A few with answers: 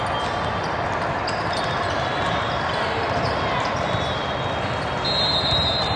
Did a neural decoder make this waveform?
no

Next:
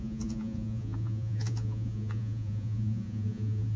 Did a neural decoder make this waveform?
yes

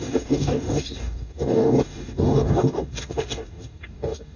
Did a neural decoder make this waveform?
yes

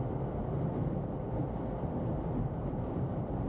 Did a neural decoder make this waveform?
no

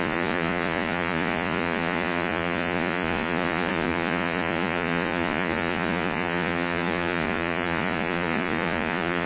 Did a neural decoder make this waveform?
yes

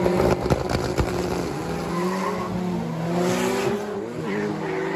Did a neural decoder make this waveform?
no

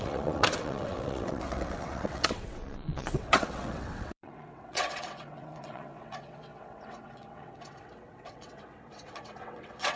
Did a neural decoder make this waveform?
yes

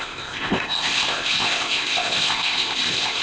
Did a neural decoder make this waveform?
yes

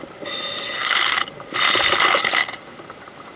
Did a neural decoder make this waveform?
no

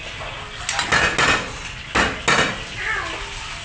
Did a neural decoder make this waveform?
no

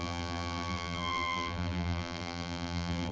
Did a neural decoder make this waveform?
yes